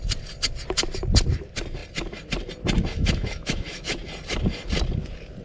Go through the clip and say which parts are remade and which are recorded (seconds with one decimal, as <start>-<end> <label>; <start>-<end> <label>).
0.0-2.9 recorded; 2.9-4.0 remade; 4.0-5.4 recorded